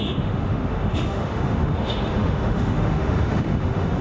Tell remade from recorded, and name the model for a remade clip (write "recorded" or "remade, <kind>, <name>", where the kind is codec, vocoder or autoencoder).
remade, autoencoder, DAC-VAE